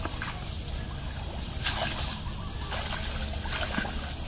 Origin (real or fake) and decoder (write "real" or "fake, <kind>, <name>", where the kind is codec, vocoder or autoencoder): real